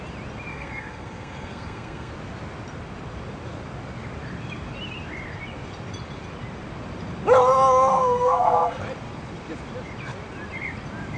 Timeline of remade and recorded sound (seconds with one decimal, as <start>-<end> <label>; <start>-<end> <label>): 0.0-0.5 recorded; 0.5-2.1 remade; 2.1-7.9 recorded; 7.9-8.8 remade; 8.8-11.2 recorded

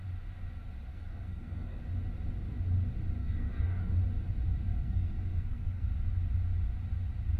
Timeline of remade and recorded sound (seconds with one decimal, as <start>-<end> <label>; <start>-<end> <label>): 0.0-0.9 recorded; 0.9-1.8 remade; 1.8-3.2 recorded; 3.2-3.9 remade; 3.9-4.7 recorded; 4.7-5.9 remade; 5.9-7.4 recorded

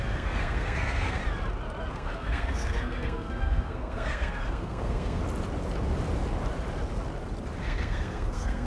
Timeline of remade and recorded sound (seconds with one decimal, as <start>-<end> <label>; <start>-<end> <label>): 0.0-1.2 remade; 1.2-1.9 recorded; 1.9-5.2 remade; 5.2-7.6 recorded; 7.6-8.7 remade

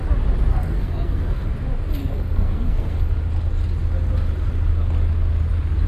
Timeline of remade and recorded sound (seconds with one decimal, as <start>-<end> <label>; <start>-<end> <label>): 0.0-0.5 recorded; 0.5-1.5 remade; 1.5-2.0 recorded; 2.0-3.0 remade; 3.0-5.9 recorded

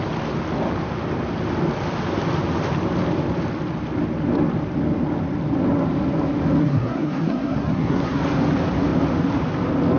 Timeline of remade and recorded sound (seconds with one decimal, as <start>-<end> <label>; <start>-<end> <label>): 0.0-6.6 recorded; 6.6-8.2 remade; 8.2-10.0 recorded

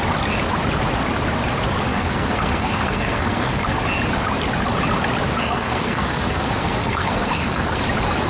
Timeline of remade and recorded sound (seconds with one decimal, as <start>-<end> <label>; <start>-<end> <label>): 0.0-1.9 recorded; 1.9-3.8 remade; 3.8-5.4 recorded; 5.4-7.8 remade; 7.8-8.3 recorded

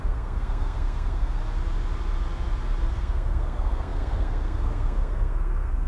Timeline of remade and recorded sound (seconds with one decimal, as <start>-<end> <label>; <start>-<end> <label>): 0.0-1.4 remade; 1.4-2.9 recorded; 2.9-5.9 remade

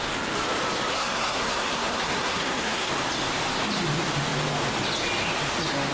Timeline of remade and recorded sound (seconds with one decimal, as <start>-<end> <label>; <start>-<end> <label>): 0.0-0.9 recorded; 0.9-2.9 remade; 2.9-5.9 recorded